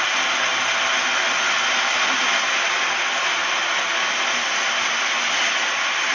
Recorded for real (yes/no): yes